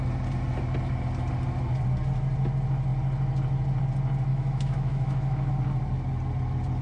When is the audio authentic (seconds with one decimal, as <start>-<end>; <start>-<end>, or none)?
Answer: 0.0-4.3; 5.5-6.8

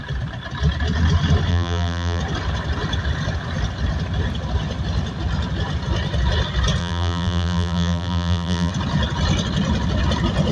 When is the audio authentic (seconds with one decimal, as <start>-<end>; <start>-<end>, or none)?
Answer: 0.0-1.5; 2.2-6.8; 8.7-10.5

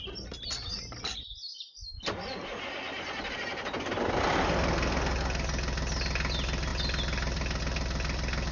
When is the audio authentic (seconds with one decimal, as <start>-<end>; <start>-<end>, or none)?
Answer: 0.0-8.5

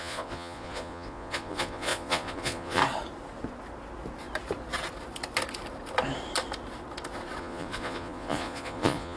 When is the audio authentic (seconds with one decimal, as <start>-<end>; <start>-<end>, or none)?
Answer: 2.8-7.4

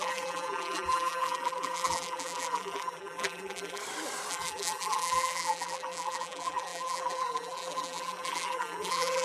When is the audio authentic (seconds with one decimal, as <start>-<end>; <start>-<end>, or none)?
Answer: 3.8-4.3

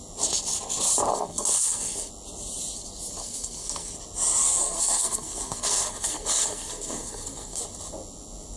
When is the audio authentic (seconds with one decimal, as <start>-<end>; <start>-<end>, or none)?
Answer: 0.0-1.1; 2.1-3.2; 3.9-4.4; 7.6-8.6

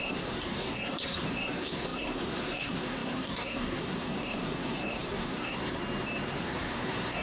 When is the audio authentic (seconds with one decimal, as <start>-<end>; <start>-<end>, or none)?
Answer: 5.8-6.4

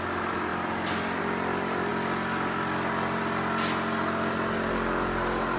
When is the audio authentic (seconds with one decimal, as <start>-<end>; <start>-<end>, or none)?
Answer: 0.0-5.6